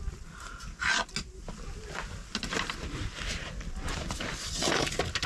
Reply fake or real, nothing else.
real